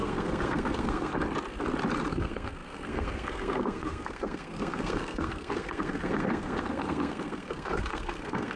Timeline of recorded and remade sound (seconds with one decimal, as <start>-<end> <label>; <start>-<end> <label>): 0.0-1.1 remade; 1.1-2.1 recorded; 2.1-8.6 remade